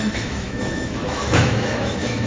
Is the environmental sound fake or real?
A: fake